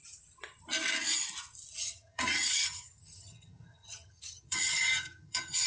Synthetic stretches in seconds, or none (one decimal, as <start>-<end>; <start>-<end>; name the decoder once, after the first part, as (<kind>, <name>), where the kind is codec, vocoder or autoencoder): 1.8-5.7 (vocoder, HiFi-GAN)

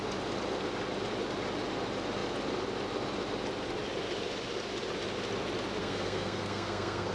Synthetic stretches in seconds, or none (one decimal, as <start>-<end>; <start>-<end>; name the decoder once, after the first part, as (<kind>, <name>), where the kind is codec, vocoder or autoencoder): 5.8-7.1 (codec, SNAC)